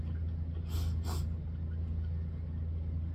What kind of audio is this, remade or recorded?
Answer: recorded